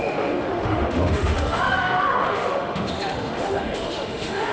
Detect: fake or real fake